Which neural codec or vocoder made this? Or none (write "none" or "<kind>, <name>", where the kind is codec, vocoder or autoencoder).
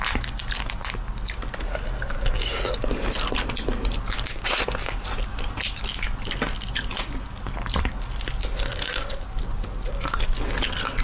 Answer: none